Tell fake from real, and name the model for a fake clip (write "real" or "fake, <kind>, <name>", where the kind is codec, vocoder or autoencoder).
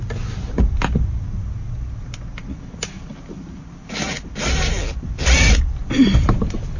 real